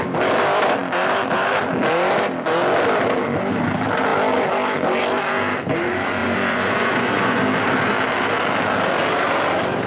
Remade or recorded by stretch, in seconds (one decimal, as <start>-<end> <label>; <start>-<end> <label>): 0.0-6.2 recorded; 6.2-7.4 remade; 7.4-9.9 recorded